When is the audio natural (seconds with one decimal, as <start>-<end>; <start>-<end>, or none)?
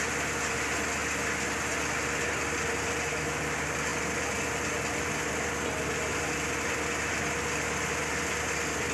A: 0.0-8.9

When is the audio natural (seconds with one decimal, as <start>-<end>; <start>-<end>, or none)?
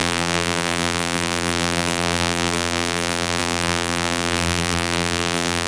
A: none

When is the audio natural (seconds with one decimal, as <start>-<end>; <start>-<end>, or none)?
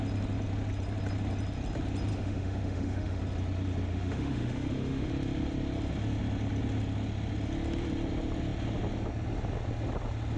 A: 0.0-2.1; 3.2-3.9; 5.1-10.4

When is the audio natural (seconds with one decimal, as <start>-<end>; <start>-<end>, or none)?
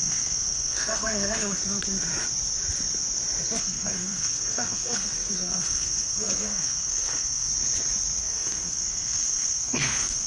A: 1.6-3.6; 7.5-8.2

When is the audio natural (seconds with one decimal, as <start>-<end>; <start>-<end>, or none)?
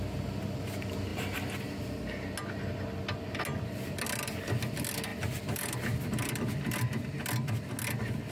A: 0.0-8.3